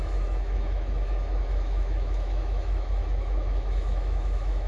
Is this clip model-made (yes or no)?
yes